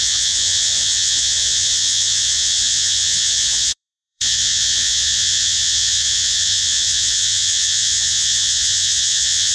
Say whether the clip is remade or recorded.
remade